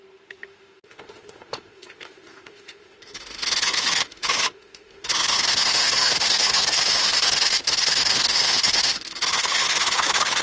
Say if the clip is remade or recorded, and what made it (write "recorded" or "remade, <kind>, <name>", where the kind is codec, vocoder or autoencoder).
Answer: remade, autoencoder, DAC-VAE